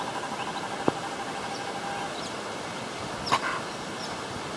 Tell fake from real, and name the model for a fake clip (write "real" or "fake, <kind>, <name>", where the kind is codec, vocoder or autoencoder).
real